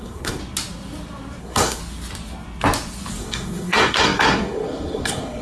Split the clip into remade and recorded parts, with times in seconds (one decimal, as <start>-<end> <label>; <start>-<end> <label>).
0.0-0.4 remade; 0.4-1.4 recorded; 1.4-1.8 remade; 1.8-3.2 recorded; 3.2-5.4 remade

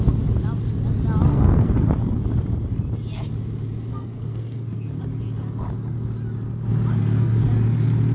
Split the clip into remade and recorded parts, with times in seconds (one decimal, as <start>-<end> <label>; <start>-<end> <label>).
0.0-1.3 recorded; 1.3-2.2 remade; 2.2-3.9 recorded; 3.9-5.0 remade; 5.0-6.9 recorded; 6.9-7.4 remade; 7.4-8.1 recorded

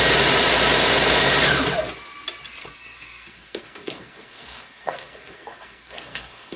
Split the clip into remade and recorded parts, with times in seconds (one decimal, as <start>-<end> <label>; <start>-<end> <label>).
0.0-2.6 recorded; 2.6-6.6 remade

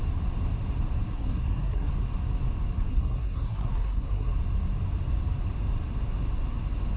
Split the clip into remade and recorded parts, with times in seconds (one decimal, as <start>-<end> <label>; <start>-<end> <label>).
0.0-1.1 recorded; 1.1-1.9 remade; 1.9-2.9 recorded; 2.9-4.3 remade; 4.3-7.0 recorded

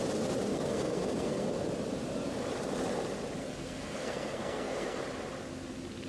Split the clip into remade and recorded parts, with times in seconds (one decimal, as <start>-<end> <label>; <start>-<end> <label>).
0.0-0.5 recorded; 0.5-1.5 remade; 1.5-3.4 recorded; 3.4-5.0 remade; 5.0-6.1 recorded

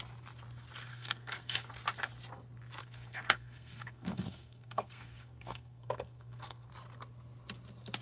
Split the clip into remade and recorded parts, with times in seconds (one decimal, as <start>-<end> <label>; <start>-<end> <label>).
0.0-0.9 recorded; 0.9-1.7 remade; 1.7-2.8 recorded; 2.8-6.7 remade; 6.7-8.0 recorded

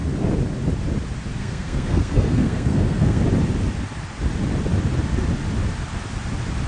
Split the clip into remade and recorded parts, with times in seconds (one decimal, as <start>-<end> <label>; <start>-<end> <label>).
0.0-1.4 recorded; 1.4-3.2 remade; 3.2-6.7 recorded

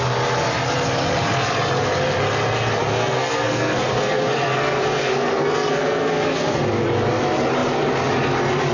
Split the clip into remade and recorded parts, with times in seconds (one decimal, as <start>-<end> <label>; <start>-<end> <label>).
0.0-2.8 recorded; 2.8-6.6 remade; 6.6-8.7 recorded